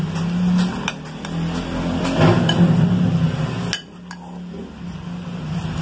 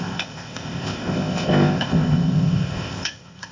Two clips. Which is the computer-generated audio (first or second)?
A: second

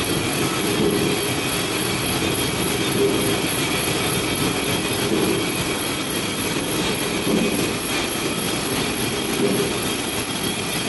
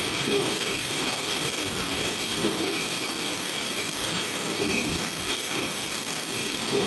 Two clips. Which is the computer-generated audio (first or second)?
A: second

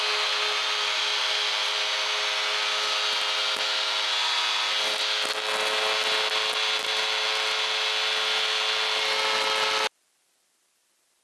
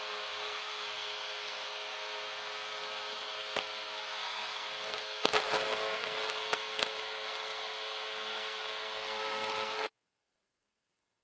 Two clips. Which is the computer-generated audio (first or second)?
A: second